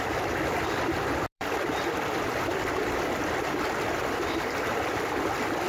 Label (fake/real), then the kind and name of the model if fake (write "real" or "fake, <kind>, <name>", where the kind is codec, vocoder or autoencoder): fake, vocoder, BigVGAN v2